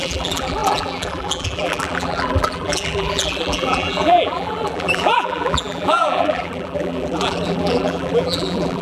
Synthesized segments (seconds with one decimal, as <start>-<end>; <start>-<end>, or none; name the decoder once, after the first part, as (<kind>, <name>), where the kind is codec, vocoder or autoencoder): 0.0-8.8 (vocoder, BigVGAN v2)